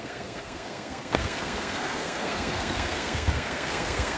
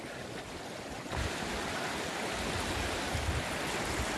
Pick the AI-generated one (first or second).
first